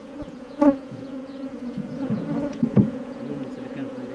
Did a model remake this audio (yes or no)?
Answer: yes